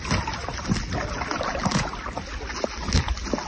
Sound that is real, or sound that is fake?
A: real